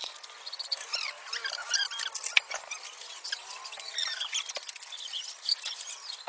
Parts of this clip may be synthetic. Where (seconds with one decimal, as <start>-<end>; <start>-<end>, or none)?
none